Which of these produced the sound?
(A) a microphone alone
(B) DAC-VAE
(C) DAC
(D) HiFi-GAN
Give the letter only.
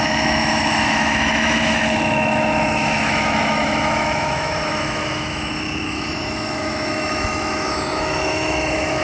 B